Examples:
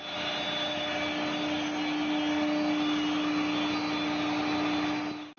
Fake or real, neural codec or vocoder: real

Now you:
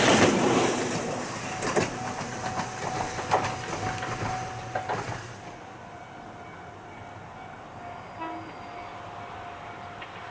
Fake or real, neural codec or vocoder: real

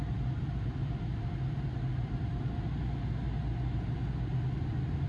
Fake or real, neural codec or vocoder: real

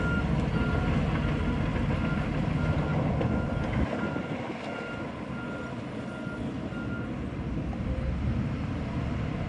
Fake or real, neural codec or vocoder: real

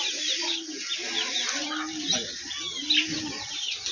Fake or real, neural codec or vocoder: real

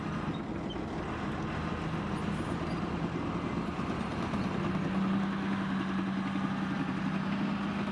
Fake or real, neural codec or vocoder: real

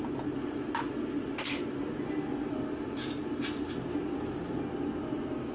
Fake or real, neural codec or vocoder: real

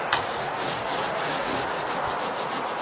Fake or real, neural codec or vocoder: fake, vocoder, Vocos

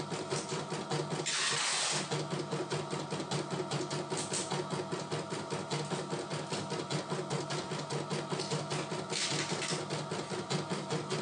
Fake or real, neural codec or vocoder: real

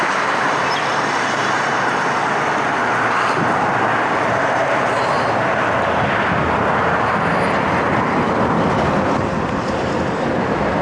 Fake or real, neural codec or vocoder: real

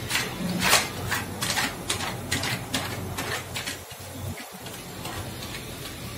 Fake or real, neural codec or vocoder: real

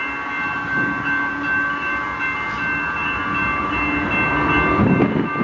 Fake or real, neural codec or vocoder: real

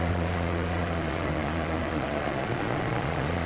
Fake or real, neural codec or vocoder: fake, vocoder, Vocos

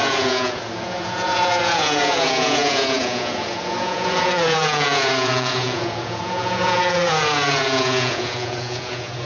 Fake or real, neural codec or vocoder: fake, vocoder, Vocos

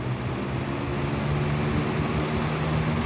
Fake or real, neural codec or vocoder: real